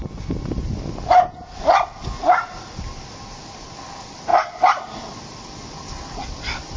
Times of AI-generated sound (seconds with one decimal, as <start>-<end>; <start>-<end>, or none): 4.3-6.8